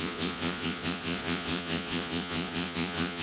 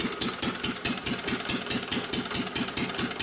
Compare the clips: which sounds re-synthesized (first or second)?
first